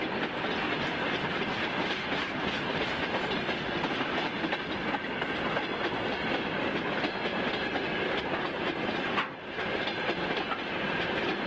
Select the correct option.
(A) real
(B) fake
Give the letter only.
A